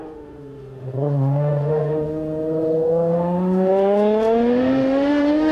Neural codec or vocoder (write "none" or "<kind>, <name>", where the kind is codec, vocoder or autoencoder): autoencoder, DAC-VAE